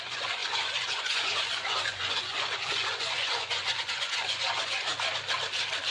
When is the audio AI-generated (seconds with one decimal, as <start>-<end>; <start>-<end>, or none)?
0.0-4.9

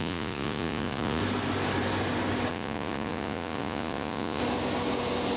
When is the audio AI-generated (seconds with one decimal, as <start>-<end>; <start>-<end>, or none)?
0.0-1.2; 2.5-4.4

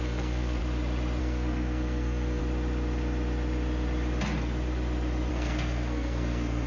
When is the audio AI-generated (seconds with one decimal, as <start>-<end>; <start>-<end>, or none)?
0.0-0.6; 1.2-2.4; 5.3-6.7